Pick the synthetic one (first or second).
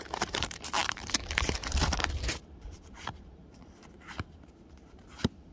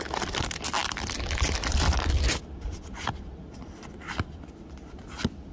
first